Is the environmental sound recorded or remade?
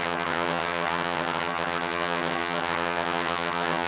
remade